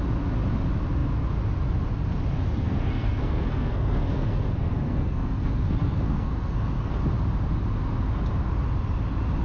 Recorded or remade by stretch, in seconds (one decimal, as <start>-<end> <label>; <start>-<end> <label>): 0.0-2.6 recorded; 2.6-6.9 remade; 6.9-9.4 recorded